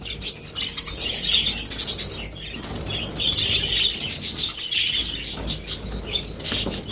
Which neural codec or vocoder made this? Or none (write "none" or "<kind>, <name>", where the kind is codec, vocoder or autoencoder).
none